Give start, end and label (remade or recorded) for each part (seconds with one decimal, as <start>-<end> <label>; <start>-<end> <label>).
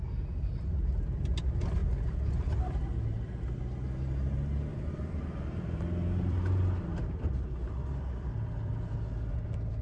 0.0-4.7 recorded; 4.7-9.8 remade